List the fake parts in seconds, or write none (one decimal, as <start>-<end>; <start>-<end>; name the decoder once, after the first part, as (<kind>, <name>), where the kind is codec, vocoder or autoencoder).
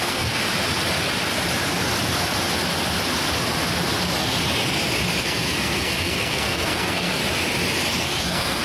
0.0-0.4 (codec, SNAC); 5.2-7.2; 8.0-8.6